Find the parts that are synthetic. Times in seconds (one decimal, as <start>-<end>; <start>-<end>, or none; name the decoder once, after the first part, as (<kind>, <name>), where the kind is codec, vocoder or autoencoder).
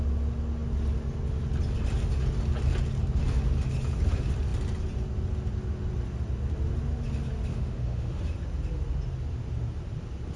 7.5-8.2 (autoencoder, DAC-VAE)